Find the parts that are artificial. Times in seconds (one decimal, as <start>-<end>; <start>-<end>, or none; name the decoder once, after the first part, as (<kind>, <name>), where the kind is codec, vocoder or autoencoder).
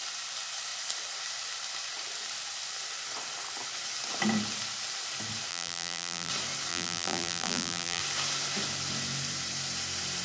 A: 5.5-6.3 (vocoder, BigVGAN v2); 6.7-8.0